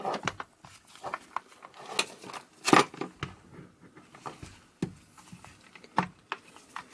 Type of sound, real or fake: real